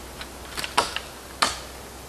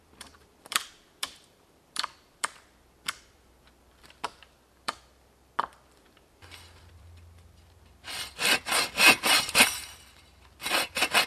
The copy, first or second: second